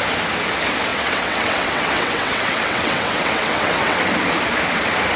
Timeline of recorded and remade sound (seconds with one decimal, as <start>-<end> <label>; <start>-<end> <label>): 0.0-0.9 recorded; 0.9-4.0 remade; 4.0-5.2 recorded

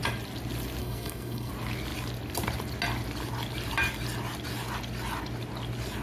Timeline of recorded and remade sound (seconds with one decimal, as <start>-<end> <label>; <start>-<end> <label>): 0.0-0.8 recorded; 0.8-1.5 remade; 1.5-6.0 recorded

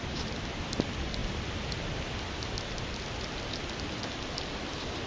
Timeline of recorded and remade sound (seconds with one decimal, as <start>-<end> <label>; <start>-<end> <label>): 0.0-5.1 recorded

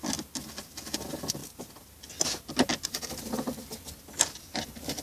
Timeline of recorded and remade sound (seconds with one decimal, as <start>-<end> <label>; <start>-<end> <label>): 0.0-5.0 recorded